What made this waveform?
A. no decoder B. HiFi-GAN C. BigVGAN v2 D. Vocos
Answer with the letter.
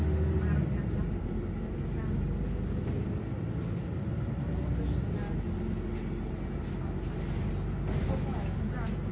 A